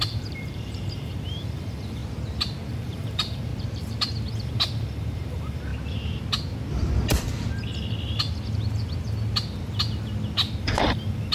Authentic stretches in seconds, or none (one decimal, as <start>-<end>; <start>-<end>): 2.0-2.7; 3.5-4.3; 5.7-10.6